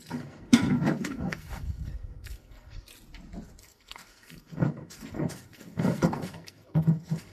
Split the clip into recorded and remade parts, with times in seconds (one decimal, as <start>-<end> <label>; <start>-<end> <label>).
0.0-2.9 remade; 2.9-3.6 recorded; 3.6-7.3 remade